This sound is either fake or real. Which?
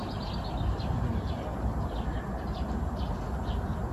real